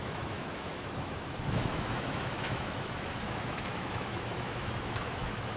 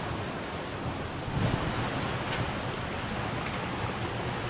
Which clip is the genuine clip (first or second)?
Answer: second